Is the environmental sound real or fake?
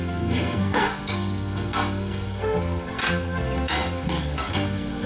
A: fake